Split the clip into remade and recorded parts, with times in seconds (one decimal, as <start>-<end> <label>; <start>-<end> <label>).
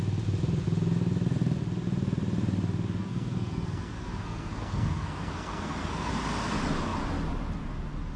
0.0-3.0 recorded; 3.0-6.1 remade; 6.1-8.2 recorded